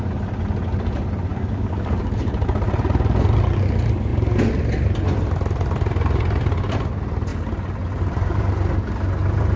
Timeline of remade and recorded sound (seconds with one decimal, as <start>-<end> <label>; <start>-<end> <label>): 0.0-1.3 recorded; 1.3-2.3 remade; 2.3-9.6 recorded